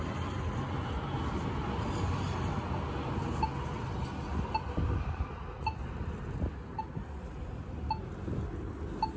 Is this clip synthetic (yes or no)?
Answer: no